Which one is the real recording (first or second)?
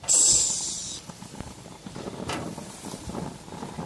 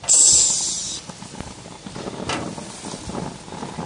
second